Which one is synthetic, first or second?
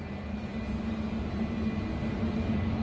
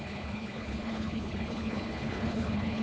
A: second